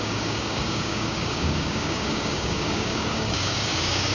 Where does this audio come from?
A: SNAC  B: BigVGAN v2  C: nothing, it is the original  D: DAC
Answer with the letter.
D